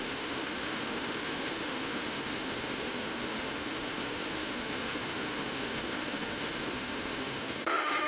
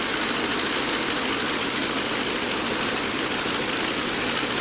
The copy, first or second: first